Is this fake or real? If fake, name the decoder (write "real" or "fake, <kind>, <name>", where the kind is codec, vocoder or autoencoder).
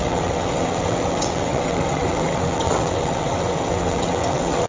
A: fake, vocoder, WaveNeXt